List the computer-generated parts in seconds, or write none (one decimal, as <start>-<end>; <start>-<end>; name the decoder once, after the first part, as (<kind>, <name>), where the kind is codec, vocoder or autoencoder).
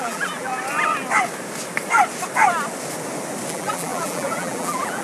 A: 0.0-0.5 (vocoder, BigVGAN v2); 3.5-5.0